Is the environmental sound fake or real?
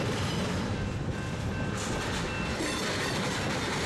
real